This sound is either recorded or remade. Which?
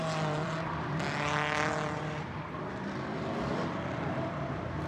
remade